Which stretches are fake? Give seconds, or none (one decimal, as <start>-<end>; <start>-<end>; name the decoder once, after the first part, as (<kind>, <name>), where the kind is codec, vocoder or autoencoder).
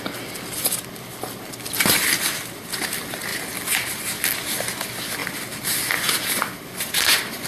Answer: none